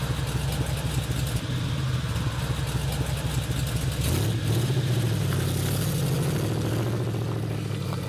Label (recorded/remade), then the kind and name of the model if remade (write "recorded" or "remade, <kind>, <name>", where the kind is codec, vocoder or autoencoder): recorded